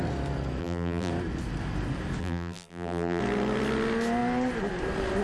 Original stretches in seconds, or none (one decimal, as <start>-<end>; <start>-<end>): 0.0-0.6; 1.1-2.2; 3.2-5.2